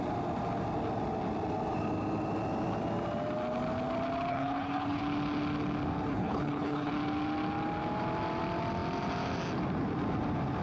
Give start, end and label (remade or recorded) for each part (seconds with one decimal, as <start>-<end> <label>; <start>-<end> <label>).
0.0-4.3 recorded; 4.3-5.0 remade; 5.0-6.1 recorded; 6.1-6.9 remade; 6.9-10.6 recorded